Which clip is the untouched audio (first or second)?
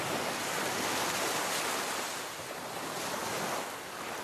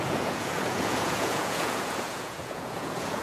first